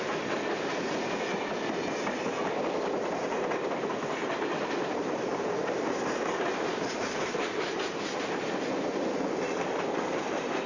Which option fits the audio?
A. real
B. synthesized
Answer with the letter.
A